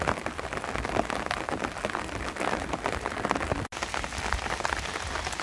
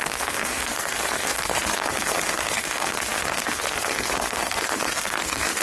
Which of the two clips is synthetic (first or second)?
second